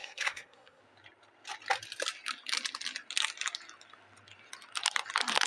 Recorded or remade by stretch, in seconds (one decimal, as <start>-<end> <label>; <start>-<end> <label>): 0.0-0.8 remade; 0.8-5.5 recorded